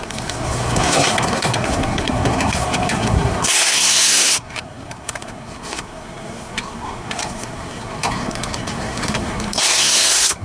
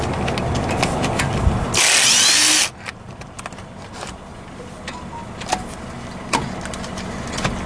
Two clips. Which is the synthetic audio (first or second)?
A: first